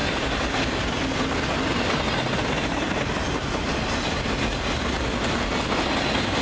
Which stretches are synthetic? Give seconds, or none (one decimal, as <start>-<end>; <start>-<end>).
none